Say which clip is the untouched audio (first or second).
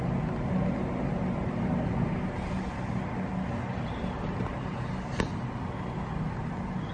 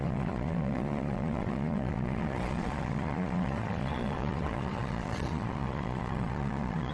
first